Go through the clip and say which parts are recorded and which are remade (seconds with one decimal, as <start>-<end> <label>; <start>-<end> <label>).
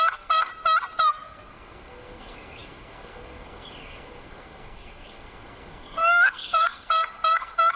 0.0-0.5 remade; 0.5-1.0 recorded; 1.0-7.8 remade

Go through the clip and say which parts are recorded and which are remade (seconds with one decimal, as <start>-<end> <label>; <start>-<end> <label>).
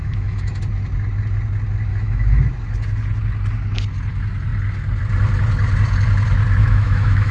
0.0-0.6 remade; 0.6-1.9 recorded; 1.9-2.4 remade; 2.4-6.6 recorded; 6.6-7.3 remade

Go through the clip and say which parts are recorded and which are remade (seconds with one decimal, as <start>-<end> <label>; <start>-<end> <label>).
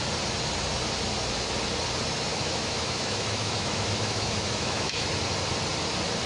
0.0-2.3 recorded; 2.3-5.1 remade; 5.1-6.3 recorded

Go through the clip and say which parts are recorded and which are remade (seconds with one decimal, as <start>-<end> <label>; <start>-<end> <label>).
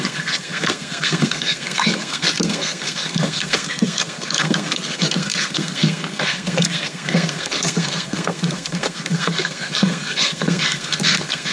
0.0-11.5 remade